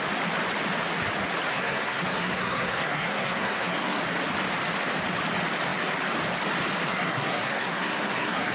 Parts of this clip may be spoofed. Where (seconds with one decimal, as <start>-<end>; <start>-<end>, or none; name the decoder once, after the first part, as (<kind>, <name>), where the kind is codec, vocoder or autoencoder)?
1.5-4.0 (codec, SNAC); 6.9-8.5